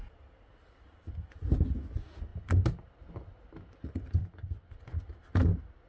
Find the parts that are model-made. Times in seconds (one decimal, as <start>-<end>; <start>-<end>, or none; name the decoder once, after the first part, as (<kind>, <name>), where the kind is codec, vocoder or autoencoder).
none